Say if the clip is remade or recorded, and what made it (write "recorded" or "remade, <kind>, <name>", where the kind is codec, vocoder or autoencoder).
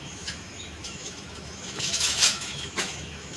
remade, autoencoder, DAC-VAE